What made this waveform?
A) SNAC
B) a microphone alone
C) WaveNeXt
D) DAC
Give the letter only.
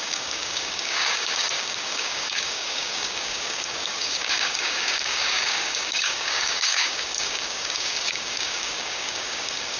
D